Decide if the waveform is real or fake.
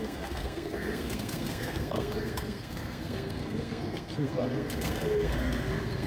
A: fake